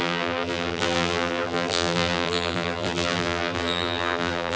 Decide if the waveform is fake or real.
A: fake